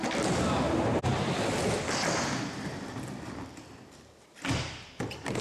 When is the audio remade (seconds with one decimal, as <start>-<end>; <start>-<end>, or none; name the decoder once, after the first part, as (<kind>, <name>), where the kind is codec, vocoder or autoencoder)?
none